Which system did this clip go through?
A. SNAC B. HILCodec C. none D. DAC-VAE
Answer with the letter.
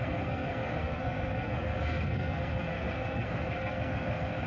A